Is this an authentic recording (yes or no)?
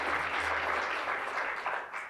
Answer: yes